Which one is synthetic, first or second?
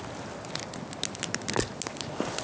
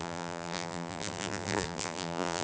second